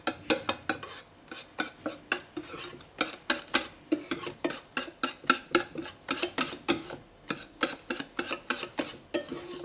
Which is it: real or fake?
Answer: real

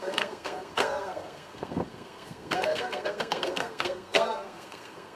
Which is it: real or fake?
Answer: fake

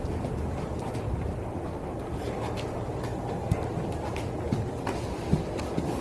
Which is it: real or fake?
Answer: real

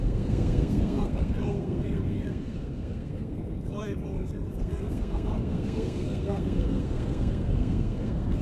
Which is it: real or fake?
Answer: fake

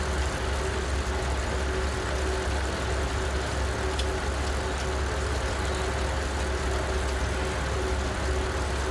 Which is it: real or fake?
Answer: real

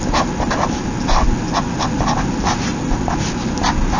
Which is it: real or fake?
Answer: real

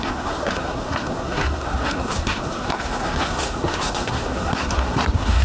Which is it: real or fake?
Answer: fake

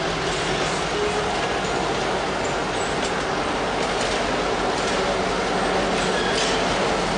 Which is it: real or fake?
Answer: real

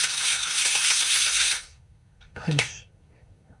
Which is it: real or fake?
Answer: fake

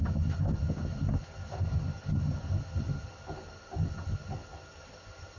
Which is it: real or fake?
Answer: real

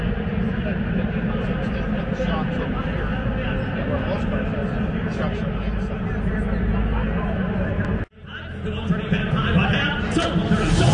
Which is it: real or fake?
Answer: real